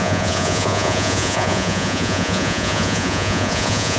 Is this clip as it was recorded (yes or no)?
no